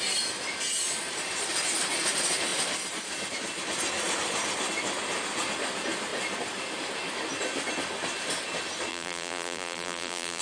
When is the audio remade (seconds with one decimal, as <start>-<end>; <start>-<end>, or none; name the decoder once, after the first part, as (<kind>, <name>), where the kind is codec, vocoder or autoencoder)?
8.9-10.4 (vocoder, BigVGAN v2)